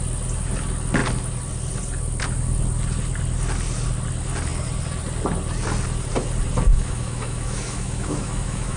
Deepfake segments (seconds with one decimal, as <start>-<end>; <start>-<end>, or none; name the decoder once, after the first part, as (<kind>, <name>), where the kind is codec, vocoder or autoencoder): 6.7-8.8 (autoencoder, DAC-VAE)